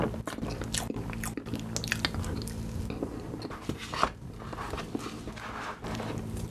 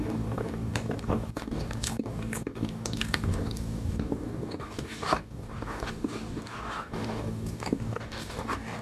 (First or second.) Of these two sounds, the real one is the first